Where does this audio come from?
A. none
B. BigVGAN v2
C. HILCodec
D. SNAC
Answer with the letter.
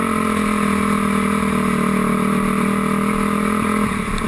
A